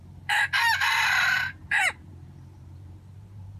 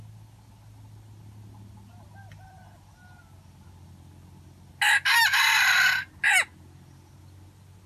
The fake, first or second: first